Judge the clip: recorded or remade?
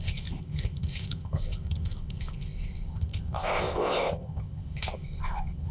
remade